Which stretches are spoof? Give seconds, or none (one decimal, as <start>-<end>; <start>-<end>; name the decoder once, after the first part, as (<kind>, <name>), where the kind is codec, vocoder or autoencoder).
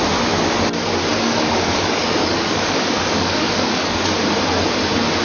1.1-4.2 (codec, DAC)